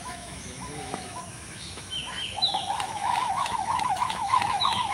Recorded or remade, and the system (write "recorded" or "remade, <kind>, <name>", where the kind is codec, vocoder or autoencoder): remade, autoencoder, DAC-VAE